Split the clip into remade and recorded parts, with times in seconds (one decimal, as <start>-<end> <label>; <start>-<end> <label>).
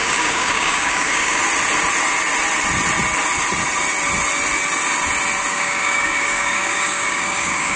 0.0-1.4 remade; 1.4-5.5 recorded; 5.5-7.8 remade